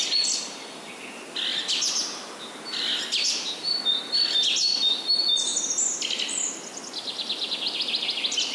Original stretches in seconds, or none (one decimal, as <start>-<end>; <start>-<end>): 0.0-8.5